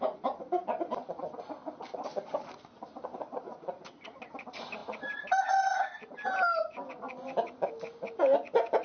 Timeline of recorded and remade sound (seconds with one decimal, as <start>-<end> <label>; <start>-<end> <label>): 0.0-8.8 recorded